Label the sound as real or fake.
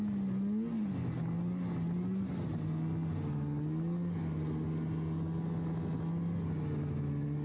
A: real